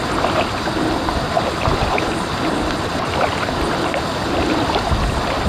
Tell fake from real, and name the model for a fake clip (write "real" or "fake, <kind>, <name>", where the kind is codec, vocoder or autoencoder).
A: real